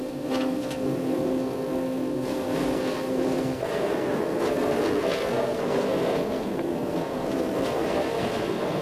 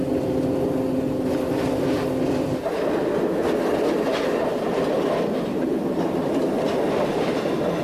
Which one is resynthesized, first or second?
first